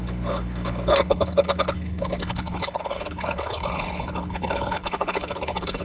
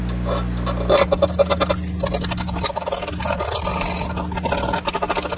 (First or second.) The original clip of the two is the second